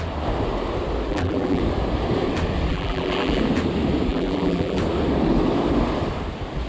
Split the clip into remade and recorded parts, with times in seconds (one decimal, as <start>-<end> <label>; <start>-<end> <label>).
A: 0.0-1.1 recorded; 1.1-1.6 remade; 1.6-2.7 recorded; 2.7-3.4 remade; 3.4-4.1 recorded; 4.1-4.8 remade; 4.8-6.7 recorded